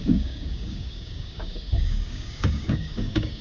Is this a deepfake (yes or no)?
yes